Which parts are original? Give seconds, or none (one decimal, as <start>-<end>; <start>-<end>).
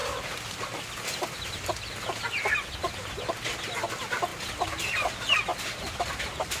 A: 1.5-4.3; 4.9-5.5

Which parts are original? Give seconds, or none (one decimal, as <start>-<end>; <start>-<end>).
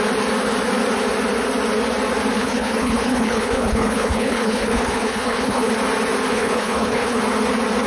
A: 0.0-2.4; 5.7-6.3; 7.2-7.9